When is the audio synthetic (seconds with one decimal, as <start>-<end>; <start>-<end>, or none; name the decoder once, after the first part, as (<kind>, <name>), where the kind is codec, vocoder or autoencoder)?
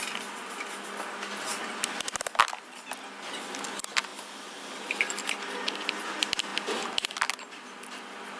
none